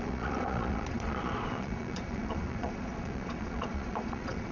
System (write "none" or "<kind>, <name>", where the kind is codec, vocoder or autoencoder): vocoder, Vocos